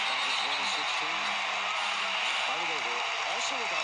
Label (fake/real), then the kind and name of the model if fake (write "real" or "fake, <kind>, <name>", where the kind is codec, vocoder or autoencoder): real